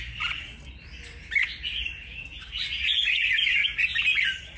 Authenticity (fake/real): real